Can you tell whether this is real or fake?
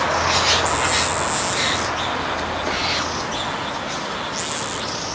real